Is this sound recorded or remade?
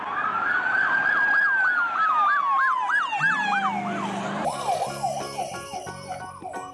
recorded